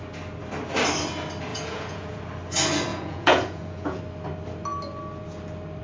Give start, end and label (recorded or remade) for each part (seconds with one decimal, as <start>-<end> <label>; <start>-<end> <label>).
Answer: 0.0-1.5 recorded; 1.5-2.2 remade; 2.2-2.9 recorded; 2.9-4.0 remade; 4.0-5.8 recorded